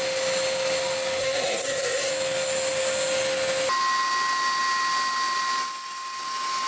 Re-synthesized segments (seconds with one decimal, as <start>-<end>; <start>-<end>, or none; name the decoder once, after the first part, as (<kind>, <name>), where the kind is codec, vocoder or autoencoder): 1.2-2.1 (codec, SNAC)

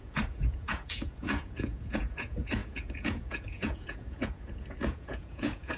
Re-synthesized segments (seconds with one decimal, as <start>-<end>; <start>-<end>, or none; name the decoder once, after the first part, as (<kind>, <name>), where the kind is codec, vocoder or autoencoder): 0.0-5.8 (vocoder, Vocos)